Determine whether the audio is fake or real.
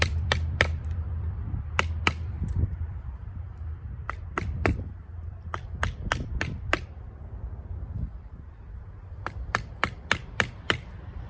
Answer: fake